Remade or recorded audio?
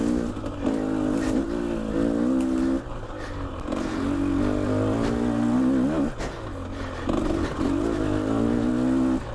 recorded